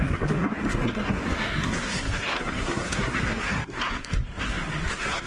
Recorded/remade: remade